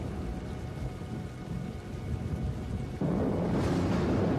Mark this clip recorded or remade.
recorded